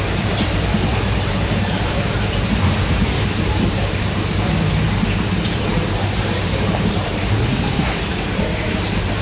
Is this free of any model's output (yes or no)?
no